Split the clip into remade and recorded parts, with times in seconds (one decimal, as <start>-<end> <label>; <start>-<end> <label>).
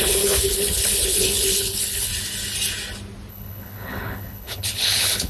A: 0.0-2.1 remade; 2.1-3.3 recorded; 3.3-5.3 remade